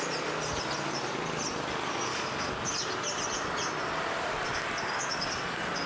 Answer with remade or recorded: recorded